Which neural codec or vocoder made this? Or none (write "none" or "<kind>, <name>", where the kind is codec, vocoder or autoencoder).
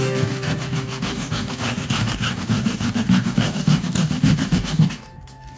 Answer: codec, DAC